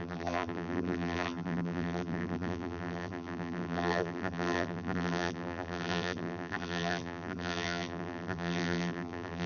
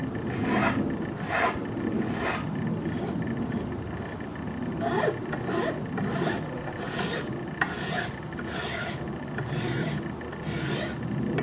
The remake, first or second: first